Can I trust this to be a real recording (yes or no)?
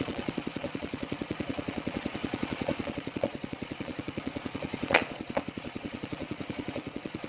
no